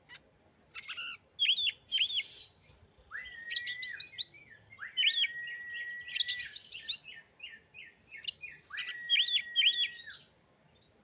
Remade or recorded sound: recorded